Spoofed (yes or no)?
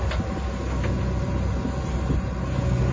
no